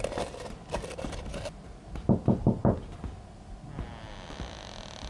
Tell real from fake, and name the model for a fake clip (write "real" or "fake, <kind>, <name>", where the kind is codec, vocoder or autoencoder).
real